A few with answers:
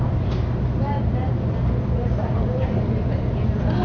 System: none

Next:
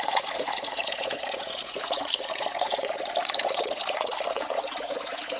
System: vocoder, Vocos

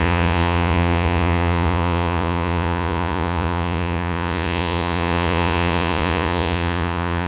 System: vocoder, Vocos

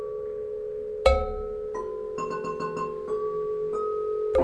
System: none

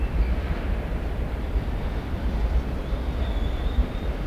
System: none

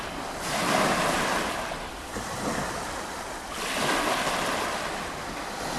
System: none